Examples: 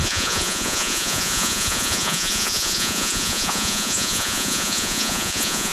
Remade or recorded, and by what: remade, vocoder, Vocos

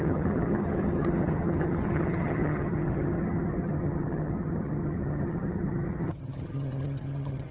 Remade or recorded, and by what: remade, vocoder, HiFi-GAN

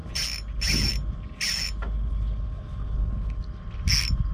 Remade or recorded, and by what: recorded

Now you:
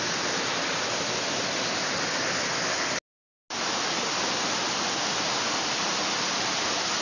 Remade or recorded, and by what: recorded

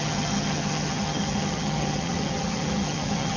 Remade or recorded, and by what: remade, vocoder, HiFi-GAN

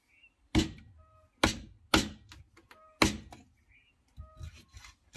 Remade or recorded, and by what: recorded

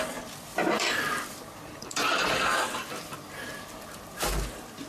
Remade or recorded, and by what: remade, vocoder, BigVGAN v2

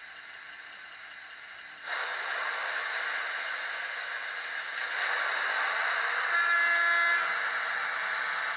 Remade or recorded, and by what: recorded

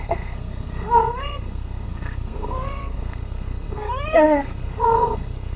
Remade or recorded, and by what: remade, codec, SNAC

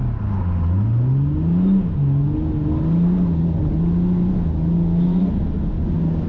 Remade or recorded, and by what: recorded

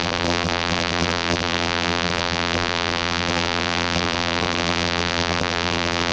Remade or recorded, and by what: remade, vocoder, BigVGAN v2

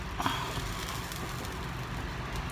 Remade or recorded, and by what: recorded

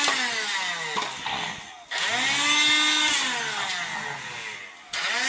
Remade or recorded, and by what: recorded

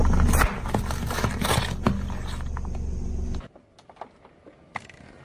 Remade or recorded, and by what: recorded